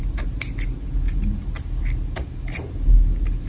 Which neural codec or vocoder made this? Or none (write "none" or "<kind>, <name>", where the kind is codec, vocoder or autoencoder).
none